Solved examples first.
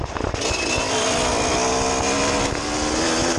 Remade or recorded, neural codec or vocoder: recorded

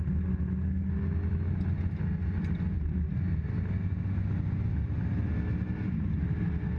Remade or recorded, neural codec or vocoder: recorded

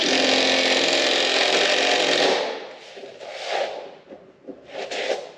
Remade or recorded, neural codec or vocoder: recorded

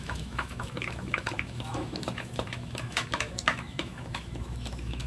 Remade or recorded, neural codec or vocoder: remade, autoencoder, DAC-VAE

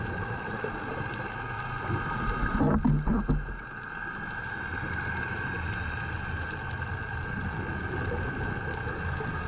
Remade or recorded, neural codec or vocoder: recorded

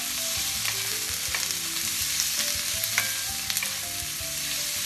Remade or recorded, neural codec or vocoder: recorded